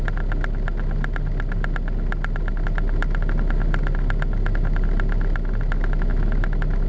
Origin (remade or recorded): recorded